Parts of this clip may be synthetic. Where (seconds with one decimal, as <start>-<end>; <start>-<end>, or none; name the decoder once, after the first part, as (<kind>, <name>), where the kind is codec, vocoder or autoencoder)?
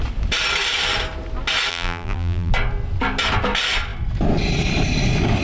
1.7-2.5 (vocoder, BigVGAN v2)